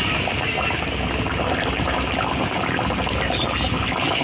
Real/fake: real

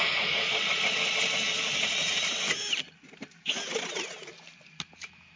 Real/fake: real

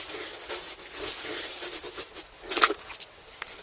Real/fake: real